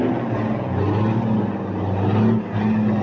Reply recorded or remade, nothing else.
recorded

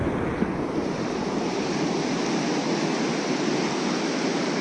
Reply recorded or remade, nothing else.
recorded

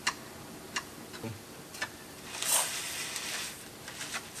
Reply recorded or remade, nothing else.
recorded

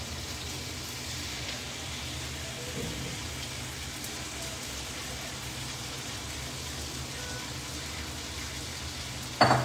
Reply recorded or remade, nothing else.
recorded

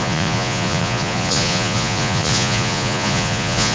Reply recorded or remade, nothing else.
remade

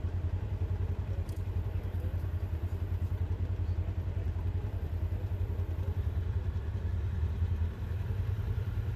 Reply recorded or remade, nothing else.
remade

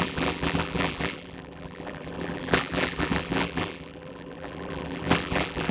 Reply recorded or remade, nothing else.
remade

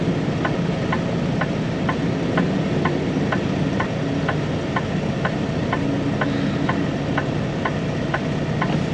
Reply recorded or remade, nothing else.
recorded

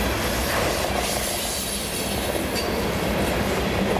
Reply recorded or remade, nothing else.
recorded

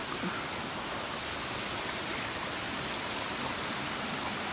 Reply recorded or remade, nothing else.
recorded